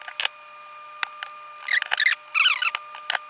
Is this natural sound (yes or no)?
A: yes